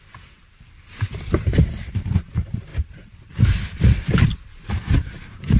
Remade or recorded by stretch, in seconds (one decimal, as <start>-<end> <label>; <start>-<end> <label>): 0.0-2.7 remade; 2.7-4.7 recorded; 4.7-5.6 remade